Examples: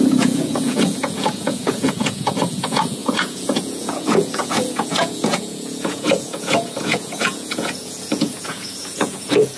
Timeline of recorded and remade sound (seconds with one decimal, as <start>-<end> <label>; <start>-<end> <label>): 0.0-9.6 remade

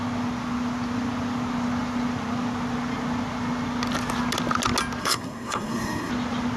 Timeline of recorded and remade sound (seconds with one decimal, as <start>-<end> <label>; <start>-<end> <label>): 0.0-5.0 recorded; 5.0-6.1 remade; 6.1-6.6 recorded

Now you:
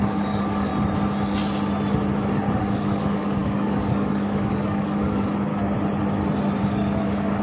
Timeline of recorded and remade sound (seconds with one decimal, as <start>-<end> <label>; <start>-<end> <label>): 0.0-0.7 remade; 0.7-2.6 recorded; 2.6-5.5 remade; 5.5-6.6 recorded; 6.6-7.4 remade

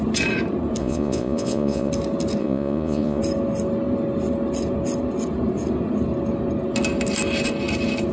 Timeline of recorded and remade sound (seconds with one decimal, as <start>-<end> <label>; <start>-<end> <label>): 0.0-0.8 recorded; 0.8-1.9 remade; 1.9-2.4 recorded; 2.4-3.2 remade; 3.2-8.1 recorded